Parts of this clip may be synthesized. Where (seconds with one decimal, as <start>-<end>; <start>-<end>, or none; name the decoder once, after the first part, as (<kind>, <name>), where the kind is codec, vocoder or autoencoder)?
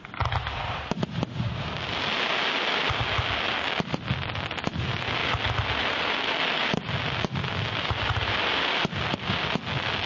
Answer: none